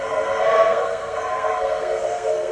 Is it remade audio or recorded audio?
remade